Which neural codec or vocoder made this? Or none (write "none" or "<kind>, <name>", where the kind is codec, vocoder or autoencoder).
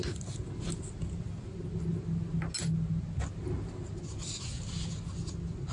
none